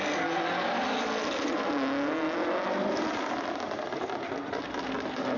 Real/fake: real